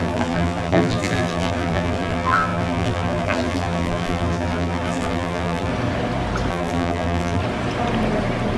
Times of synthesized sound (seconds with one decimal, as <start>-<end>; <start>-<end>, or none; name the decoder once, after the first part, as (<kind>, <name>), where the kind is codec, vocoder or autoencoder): 0.0-5.7 (vocoder, BigVGAN v2); 6.5-7.4

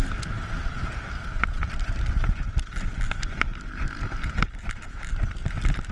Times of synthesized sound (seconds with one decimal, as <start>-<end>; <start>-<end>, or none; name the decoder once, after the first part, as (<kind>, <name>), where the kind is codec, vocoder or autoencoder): 3.5-5.9 (vocoder, BigVGAN v2)

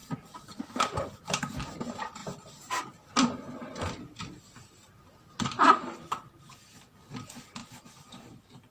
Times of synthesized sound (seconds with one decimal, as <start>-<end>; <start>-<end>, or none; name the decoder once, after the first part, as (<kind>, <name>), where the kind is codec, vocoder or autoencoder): none

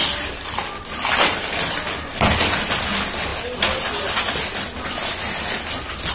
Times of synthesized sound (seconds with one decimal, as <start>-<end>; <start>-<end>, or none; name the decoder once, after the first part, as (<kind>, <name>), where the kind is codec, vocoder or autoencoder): 0.0-2.9 (vocoder, BigVGAN v2)

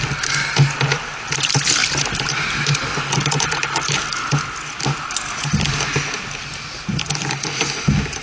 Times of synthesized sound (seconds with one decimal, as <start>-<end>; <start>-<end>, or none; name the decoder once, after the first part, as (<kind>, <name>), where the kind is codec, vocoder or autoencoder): none

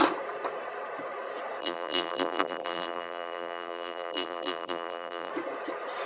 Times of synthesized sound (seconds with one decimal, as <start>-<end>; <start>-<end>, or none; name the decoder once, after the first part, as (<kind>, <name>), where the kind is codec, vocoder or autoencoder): 1.6-5.3 (vocoder, BigVGAN v2)